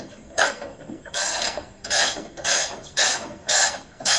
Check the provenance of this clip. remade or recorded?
remade